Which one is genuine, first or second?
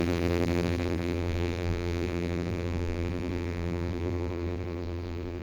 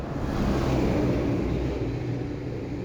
second